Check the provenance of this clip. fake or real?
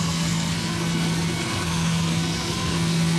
fake